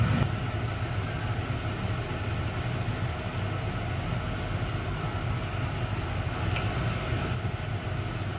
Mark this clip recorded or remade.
recorded